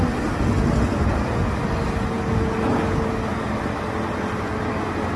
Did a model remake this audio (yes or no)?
no